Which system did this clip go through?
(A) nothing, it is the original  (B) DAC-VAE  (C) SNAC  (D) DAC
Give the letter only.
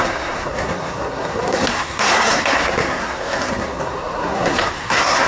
C